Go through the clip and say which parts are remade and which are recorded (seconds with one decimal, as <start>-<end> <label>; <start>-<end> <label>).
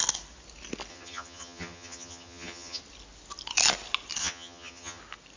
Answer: 0.0-0.9 recorded; 0.9-2.8 remade; 2.8-4.2 recorded; 4.2-5.0 remade; 5.0-5.4 recorded